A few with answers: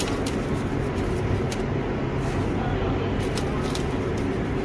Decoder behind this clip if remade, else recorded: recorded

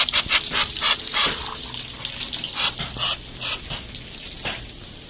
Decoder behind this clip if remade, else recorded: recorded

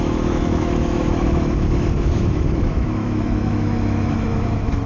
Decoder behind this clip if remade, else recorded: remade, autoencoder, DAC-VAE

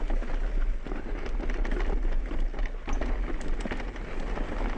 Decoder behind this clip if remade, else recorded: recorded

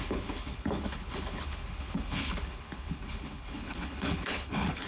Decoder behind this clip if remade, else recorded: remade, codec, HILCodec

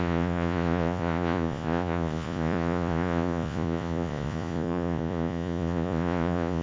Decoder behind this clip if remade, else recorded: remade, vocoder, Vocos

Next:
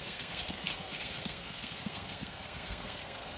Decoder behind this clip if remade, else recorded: remade, codec, SNAC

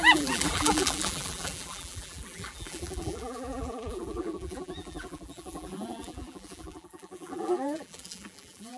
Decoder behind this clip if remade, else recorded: remade, vocoder, BigVGAN v2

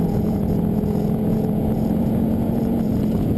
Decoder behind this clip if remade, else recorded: remade, vocoder, Vocos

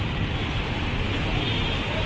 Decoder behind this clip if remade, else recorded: recorded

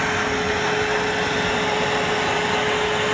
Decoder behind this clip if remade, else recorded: recorded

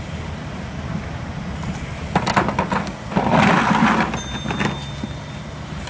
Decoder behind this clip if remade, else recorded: recorded